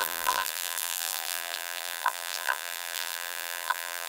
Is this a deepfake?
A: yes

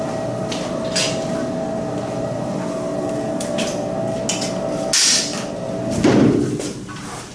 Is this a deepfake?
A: no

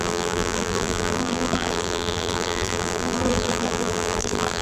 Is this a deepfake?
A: yes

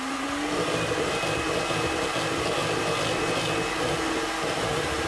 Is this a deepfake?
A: no